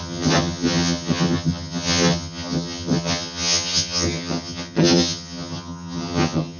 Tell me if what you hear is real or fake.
fake